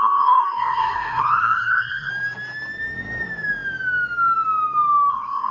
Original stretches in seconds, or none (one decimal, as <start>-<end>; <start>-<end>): 2.1-5.1